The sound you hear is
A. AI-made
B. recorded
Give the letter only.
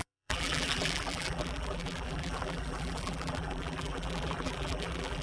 A